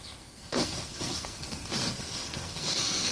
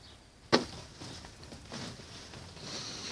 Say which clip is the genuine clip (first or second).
second